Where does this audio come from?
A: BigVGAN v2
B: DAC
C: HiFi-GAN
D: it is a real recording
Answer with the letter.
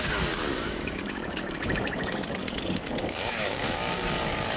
B